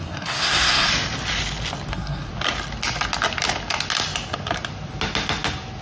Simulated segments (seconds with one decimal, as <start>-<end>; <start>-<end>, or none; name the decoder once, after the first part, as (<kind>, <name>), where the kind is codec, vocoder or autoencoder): 0.0-0.9 (codec, SNAC); 1.9-2.3